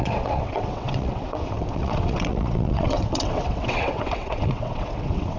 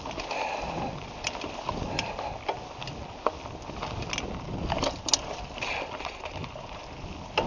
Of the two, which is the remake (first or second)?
first